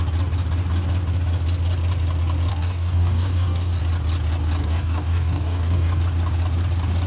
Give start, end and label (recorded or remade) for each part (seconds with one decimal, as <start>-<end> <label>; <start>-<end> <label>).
0.0-2.5 recorded; 2.5-3.8 remade; 3.8-4.6 recorded; 4.6-6.0 remade; 6.0-7.1 recorded